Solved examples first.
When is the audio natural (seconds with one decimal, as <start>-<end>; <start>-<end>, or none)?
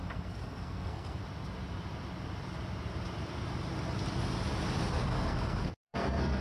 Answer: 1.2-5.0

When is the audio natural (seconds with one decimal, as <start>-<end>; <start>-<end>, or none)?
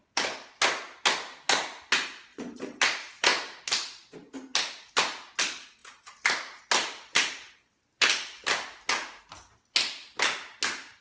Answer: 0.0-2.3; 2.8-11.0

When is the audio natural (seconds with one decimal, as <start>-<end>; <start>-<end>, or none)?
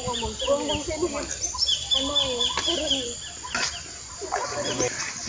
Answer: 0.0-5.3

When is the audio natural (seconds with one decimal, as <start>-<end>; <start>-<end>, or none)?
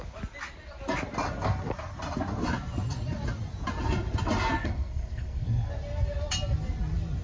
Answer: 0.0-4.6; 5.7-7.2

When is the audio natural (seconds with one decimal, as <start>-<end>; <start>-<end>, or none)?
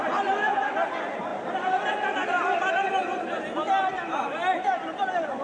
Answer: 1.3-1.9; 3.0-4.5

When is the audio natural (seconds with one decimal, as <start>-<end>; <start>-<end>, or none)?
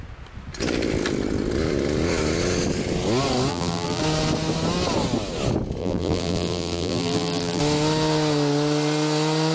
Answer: 0.0-3.5; 4.0-5.8; 7.6-9.5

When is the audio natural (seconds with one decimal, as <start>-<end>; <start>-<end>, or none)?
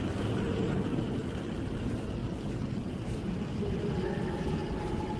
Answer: 0.0-5.2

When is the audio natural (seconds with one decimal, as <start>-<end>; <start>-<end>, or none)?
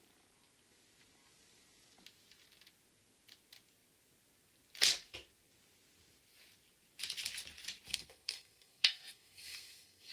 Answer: 0.0-7.9